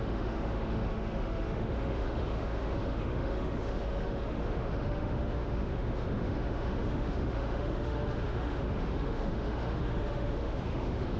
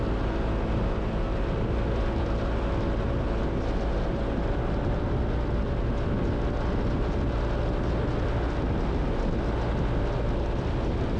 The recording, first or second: second